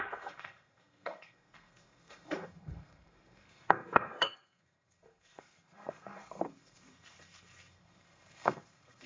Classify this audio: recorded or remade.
remade